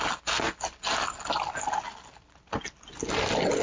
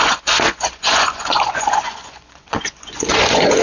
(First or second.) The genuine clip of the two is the first